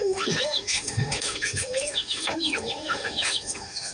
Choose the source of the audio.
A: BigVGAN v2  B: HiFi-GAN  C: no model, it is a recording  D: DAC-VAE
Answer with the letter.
D